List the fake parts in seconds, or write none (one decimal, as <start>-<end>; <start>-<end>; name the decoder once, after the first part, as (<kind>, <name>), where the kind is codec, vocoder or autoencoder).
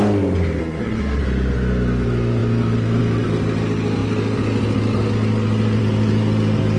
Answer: 0.6-1.2 (codec, SNAC)